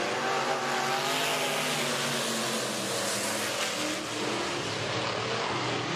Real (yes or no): yes